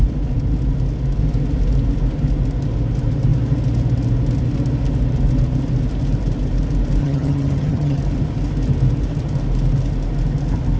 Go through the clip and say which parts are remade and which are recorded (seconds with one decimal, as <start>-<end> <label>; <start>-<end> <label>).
0.0-7.0 recorded; 7.0-8.0 remade; 8.0-10.8 recorded

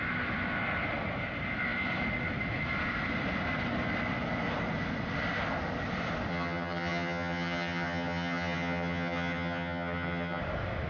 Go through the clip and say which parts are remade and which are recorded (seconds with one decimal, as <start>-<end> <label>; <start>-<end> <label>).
0.0-6.3 recorded; 6.3-10.4 remade; 10.4-10.9 recorded

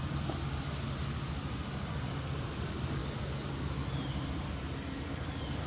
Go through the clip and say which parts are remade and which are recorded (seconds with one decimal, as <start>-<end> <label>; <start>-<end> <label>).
0.0-5.7 recorded

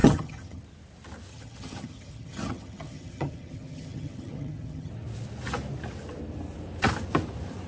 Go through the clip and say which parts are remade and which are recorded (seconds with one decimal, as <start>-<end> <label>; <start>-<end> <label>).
0.0-0.6 remade; 0.6-1.3 recorded; 1.3-4.9 remade; 4.9-7.7 recorded

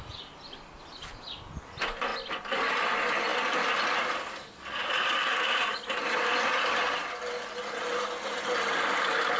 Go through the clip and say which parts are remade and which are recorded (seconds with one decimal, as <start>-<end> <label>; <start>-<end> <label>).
0.0-9.4 recorded